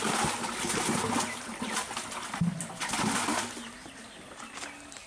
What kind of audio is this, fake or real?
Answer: real